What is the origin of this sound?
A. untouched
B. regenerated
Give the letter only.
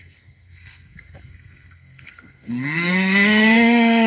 B